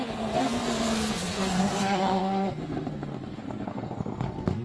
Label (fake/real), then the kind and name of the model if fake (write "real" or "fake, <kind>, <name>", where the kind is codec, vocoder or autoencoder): fake, codec, SNAC